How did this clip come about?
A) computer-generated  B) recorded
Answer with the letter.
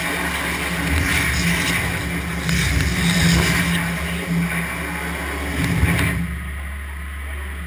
B